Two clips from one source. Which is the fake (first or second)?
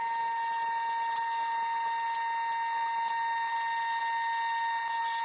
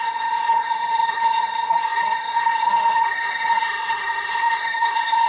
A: second